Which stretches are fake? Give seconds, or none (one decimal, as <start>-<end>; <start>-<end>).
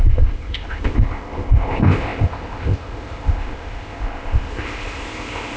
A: 0.0-5.6